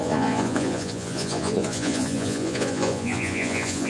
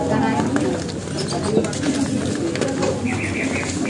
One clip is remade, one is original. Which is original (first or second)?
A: second